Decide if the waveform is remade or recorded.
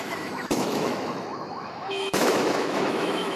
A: remade